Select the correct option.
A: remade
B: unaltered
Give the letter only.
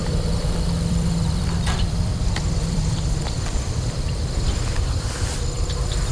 A